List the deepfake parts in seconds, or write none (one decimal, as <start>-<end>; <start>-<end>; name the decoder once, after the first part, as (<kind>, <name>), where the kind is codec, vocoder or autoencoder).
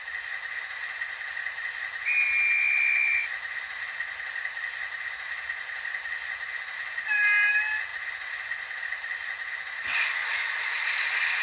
none